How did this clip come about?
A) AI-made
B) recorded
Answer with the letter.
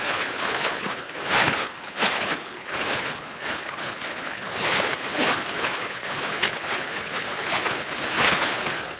A